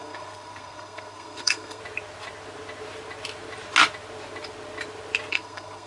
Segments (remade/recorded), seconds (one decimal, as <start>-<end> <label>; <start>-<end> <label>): 0.0-1.8 remade; 1.8-5.3 recorded; 5.3-5.9 remade